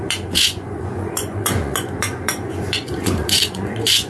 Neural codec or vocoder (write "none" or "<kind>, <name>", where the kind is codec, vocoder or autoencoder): vocoder, Vocos